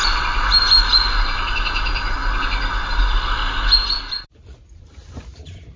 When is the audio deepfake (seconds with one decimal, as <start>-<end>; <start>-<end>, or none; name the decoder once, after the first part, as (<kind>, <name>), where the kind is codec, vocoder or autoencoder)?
0.0-0.9 (vocoder, BigVGAN v2); 1.5-2.2; 2.8-3.4; 4.8-5.8